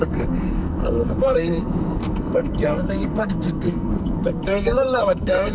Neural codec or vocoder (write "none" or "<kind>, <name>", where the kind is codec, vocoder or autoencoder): codec, SNAC